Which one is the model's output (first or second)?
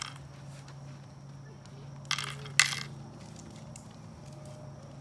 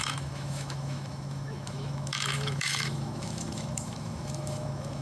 second